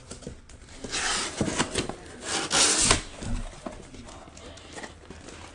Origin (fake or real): real